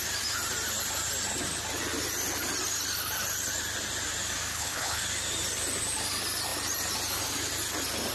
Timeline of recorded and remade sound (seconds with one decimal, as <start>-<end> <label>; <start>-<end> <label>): 0.0-4.5 recorded; 4.5-5.0 remade; 5.0-8.1 recorded

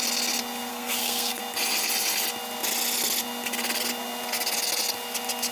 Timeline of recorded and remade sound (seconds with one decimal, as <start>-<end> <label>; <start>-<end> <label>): 0.0-0.7 recorded; 0.7-1.4 remade; 1.4-5.5 recorded

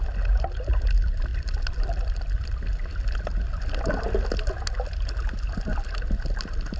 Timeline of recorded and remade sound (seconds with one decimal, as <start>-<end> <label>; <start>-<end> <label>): 0.0-1.3 recorded; 1.3-2.2 remade; 2.2-6.8 recorded

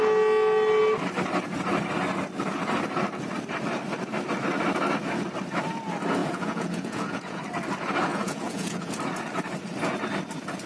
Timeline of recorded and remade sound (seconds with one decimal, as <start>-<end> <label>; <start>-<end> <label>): 0.0-6.2 recorded; 6.2-7.4 remade; 7.4-8.1 recorded; 8.1-8.9 remade; 8.9-10.7 recorded

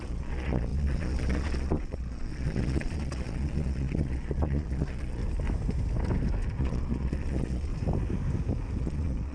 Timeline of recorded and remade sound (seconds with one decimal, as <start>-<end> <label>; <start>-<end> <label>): 0.0-5.2 remade; 5.2-6.6 recorded; 6.6-7.7 remade; 7.7-8.8 recorded; 8.8-9.3 remade

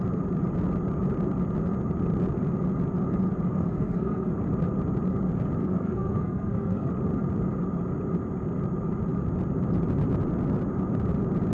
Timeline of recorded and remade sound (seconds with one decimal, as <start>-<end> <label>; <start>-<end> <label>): 0.0-3.5 recorded; 3.5-4.3 remade; 4.3-5.6 recorded; 5.6-6.9 remade; 6.9-11.5 recorded